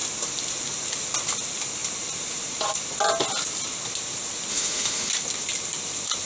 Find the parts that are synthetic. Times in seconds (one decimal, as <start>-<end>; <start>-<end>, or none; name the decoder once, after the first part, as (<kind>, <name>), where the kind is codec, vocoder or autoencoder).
4.5-5.1 (autoencoder, DAC-VAE)